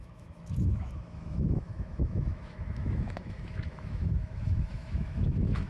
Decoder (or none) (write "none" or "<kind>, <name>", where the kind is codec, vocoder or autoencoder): autoencoder, DAC-VAE